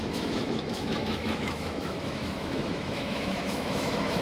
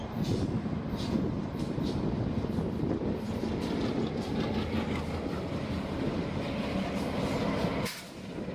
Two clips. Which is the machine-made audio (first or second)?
first